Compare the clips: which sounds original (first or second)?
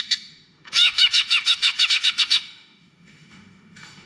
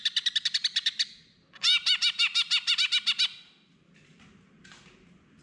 second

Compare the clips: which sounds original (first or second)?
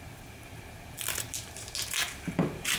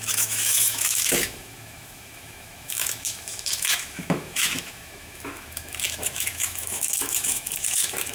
first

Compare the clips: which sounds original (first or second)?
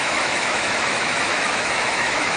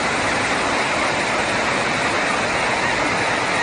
second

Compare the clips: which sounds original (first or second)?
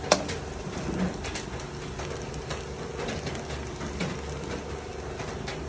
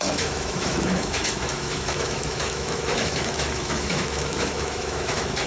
first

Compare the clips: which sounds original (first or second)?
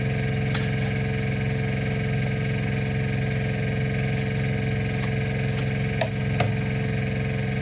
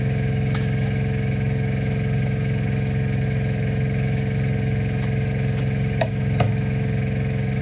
first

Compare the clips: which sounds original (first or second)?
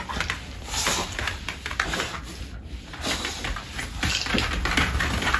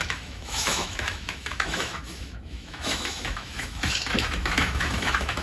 first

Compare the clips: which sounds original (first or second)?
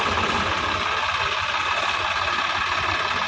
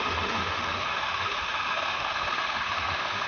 first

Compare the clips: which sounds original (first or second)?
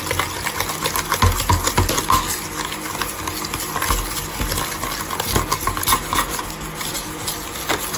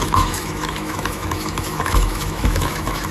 first